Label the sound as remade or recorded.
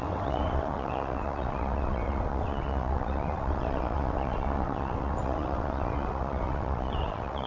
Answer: remade